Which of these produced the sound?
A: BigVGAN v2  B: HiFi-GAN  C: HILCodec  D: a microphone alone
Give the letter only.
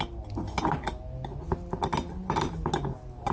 D